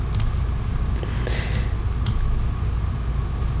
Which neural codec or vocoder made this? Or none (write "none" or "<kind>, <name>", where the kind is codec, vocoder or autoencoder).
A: none